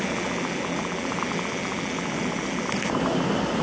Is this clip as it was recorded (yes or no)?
yes